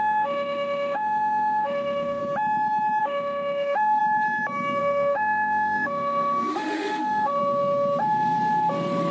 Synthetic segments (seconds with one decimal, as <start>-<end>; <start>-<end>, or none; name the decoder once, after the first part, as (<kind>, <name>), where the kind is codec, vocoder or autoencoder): 0.0-2.2 (autoencoder, DAC-VAE); 3.0-4.0; 4.8-7.4